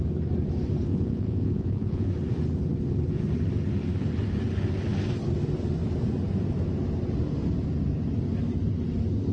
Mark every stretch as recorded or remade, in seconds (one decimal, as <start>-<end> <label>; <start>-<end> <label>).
0.0-0.9 recorded; 0.9-2.1 remade; 2.1-9.3 recorded